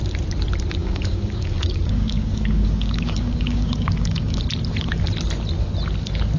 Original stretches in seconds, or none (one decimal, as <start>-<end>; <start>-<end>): 0.0-0.8; 4.4-6.4